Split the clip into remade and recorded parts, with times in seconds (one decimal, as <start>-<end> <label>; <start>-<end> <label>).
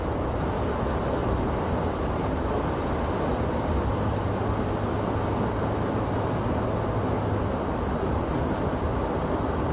0.0-1.2 recorded; 1.2-2.9 remade; 2.9-9.7 recorded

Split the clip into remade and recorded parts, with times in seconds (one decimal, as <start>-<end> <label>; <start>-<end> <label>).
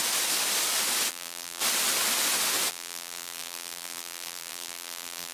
0.0-1.1 recorded; 1.1-1.6 remade; 1.6-2.7 recorded; 2.7-5.3 remade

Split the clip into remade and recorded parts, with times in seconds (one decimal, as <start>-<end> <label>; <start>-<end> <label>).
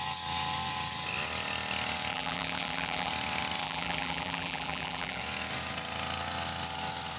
0.0-2.1 recorded; 2.1-3.1 remade; 3.1-3.6 recorded; 3.6-5.2 remade; 5.2-7.2 recorded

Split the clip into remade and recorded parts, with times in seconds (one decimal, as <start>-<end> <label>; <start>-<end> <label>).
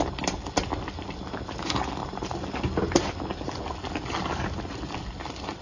0.0-5.6 recorded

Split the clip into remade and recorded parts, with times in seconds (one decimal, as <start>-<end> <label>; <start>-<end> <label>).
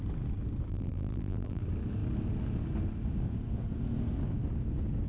0.0-0.7 recorded; 0.7-1.6 remade; 1.6-5.1 recorded